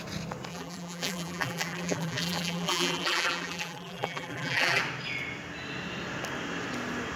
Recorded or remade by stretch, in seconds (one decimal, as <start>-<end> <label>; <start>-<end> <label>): 0.0-0.5 recorded; 0.5-4.8 remade; 4.8-7.2 recorded